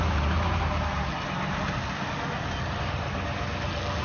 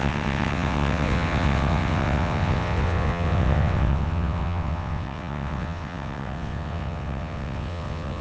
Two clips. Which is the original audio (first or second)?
first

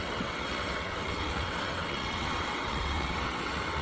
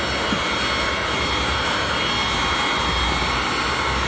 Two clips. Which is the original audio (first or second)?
second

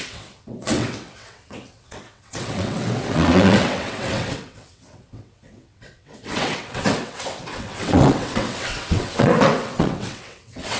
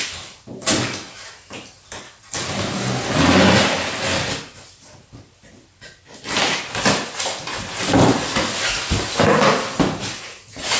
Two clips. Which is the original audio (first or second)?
second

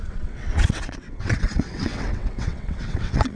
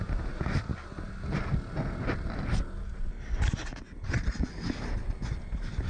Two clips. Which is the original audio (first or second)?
second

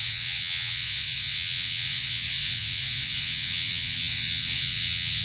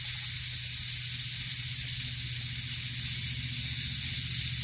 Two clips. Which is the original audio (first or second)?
second